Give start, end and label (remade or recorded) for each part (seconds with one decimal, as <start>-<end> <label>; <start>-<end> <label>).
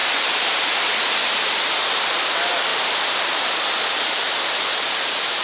0.0-0.8 remade; 0.8-2.7 recorded; 2.7-3.5 remade; 3.5-5.4 recorded